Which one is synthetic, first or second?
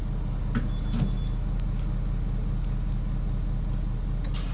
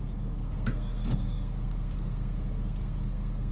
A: second